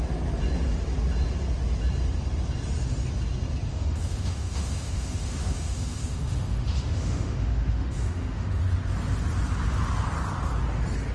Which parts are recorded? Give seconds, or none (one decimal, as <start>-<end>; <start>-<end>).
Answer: 0.0-3.7; 8.6-11.1